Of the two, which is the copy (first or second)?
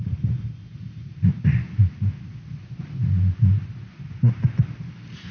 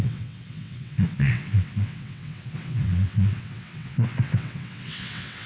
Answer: second